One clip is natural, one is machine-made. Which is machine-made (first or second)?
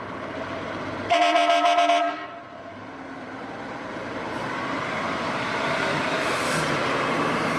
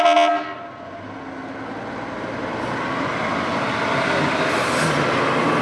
first